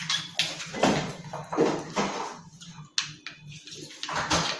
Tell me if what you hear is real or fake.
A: real